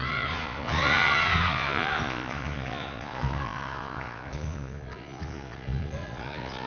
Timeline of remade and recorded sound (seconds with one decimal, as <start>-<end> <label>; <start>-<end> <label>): 0.0-6.7 remade